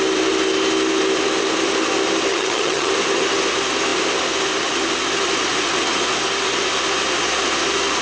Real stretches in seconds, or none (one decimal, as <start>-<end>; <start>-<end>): 0.0-2.3; 2.9-8.0